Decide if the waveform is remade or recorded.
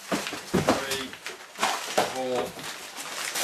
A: recorded